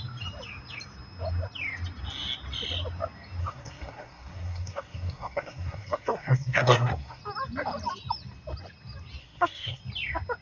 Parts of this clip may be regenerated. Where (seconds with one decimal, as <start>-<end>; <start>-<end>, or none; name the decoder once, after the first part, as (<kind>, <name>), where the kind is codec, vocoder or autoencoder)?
3.4-7.2 (codec, SNAC); 9.2-9.8